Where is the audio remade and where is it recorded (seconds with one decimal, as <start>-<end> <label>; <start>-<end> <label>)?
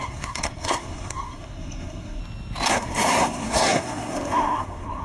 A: 0.0-2.2 remade; 2.2-2.7 recorded; 2.7-5.0 remade